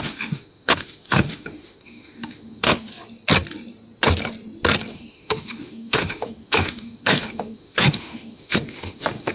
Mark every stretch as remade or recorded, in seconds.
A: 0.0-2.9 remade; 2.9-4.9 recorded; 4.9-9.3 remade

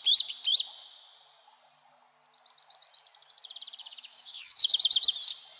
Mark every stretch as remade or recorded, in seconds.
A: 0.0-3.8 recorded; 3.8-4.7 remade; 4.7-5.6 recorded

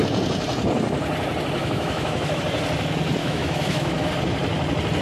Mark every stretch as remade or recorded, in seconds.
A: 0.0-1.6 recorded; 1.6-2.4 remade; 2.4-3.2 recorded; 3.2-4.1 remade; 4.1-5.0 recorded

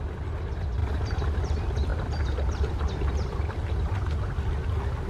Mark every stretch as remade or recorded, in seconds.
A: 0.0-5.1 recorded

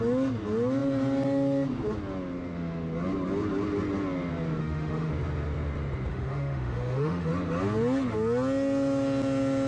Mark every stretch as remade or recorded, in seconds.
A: 0.0-4.6 recorded; 4.6-5.1 remade; 5.1-6.1 recorded; 6.1-7.3 remade; 7.3-9.7 recorded

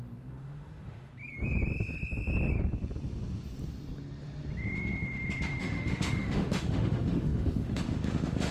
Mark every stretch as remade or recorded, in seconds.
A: 0.0-1.1 remade; 1.1-5.6 recorded; 5.6-8.5 remade

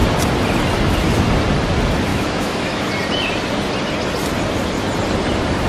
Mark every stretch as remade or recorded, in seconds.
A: 0.0-2.1 recorded; 2.1-2.9 remade; 2.9-5.7 recorded

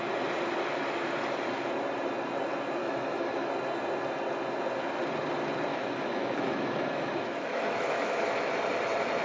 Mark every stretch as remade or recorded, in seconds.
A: 0.0-2.8 recorded; 2.8-3.5 remade; 3.5-5.7 recorded; 5.7-8.5 remade; 8.5-9.2 recorded